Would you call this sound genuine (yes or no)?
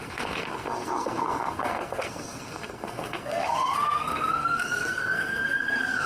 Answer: no